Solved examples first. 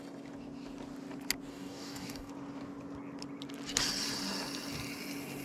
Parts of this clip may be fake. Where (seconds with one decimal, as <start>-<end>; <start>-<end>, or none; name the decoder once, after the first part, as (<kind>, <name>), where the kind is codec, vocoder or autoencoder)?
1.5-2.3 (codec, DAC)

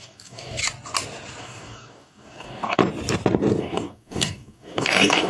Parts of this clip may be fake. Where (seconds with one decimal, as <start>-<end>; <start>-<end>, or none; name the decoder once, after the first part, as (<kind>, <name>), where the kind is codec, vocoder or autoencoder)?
0.0-0.6 (codec, DAC); 1.4-2.8; 3.6-5.3

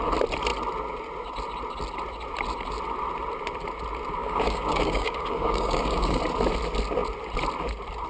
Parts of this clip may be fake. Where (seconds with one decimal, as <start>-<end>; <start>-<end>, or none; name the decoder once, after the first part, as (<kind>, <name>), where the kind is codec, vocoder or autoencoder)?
4.2-6.2 (codec, DAC)

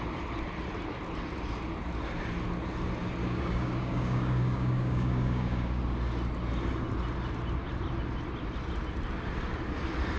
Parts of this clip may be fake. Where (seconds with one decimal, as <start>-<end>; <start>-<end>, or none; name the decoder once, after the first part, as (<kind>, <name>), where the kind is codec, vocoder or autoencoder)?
3.2-5.8 (codec, DAC)

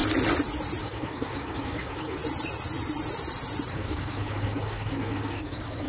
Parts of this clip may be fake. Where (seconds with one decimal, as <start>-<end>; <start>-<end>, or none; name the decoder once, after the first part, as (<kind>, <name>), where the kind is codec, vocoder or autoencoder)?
0.8-2.2 (codec, DAC); 3.7-5.9

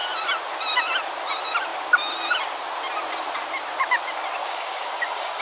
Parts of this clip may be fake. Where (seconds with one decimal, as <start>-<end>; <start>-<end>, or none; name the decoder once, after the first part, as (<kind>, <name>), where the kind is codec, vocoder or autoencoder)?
4.4-5.4 (codec, DAC)

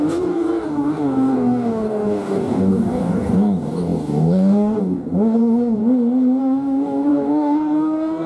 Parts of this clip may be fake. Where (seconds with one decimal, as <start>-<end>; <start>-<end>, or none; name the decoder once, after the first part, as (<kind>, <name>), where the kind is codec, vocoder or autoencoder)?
0.0-5.8 (codec, DAC); 6.4-8.3